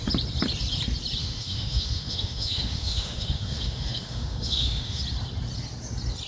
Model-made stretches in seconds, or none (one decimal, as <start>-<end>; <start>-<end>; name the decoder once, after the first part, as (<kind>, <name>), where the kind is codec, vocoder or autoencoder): 1.2-5.0 (autoencoder, DAC-VAE)